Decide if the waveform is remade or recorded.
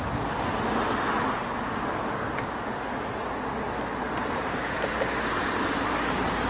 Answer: recorded